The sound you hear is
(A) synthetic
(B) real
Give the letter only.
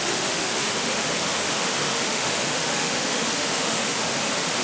A